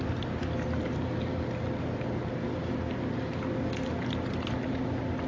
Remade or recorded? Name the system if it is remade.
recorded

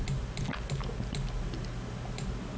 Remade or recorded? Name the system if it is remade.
recorded